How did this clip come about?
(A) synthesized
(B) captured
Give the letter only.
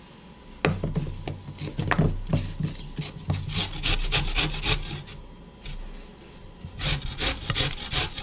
B